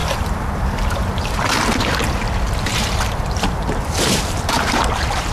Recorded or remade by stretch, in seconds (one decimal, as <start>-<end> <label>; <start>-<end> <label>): 0.0-1.7 remade; 1.7-2.7 recorded; 2.7-4.8 remade; 4.8-5.3 recorded